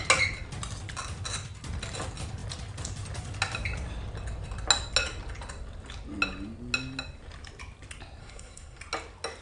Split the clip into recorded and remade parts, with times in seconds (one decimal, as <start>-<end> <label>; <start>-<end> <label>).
0.0-8.2 recorded; 8.2-8.8 remade; 8.8-9.4 recorded